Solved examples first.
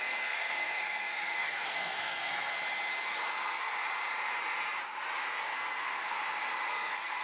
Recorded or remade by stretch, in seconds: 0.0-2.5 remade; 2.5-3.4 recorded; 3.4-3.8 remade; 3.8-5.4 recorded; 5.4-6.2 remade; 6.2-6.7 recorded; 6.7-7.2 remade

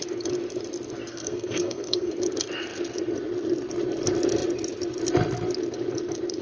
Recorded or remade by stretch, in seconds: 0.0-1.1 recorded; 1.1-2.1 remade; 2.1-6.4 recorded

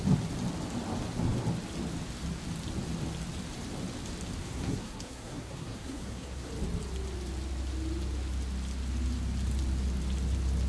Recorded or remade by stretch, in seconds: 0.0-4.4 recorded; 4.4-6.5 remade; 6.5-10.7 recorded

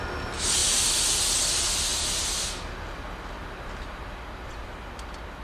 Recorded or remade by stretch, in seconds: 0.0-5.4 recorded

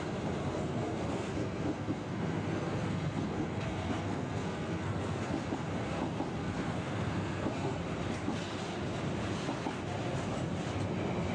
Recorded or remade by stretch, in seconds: 0.0-0.5 recorded; 0.5-5.3 remade; 5.3-6.4 recorded; 6.4-7.8 remade; 7.8-11.3 recorded